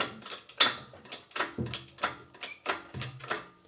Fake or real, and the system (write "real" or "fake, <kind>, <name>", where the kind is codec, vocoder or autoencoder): real